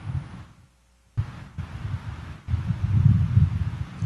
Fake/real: real